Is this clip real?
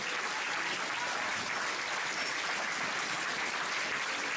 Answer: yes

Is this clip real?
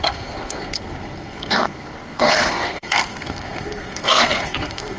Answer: no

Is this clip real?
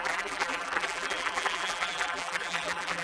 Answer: no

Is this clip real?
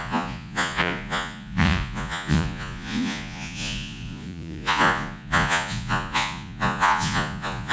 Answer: no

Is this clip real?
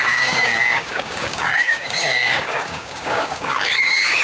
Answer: no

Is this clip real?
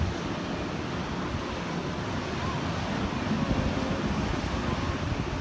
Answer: yes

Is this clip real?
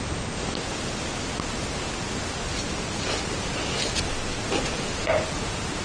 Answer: yes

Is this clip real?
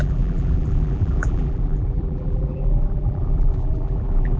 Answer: no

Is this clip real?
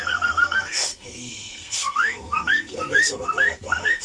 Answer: no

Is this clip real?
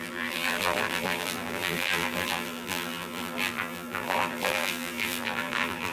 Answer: no